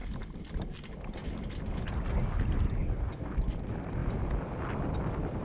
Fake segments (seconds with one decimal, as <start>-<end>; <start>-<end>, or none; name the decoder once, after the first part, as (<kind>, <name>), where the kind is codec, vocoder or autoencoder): none